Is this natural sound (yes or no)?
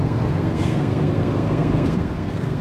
no